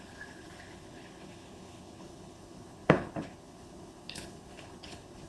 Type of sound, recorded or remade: remade